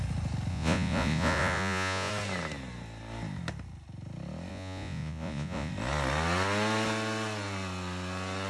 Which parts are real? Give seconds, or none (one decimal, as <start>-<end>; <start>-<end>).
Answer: 0.0-0.5; 2.1-4.5; 5.7-8.5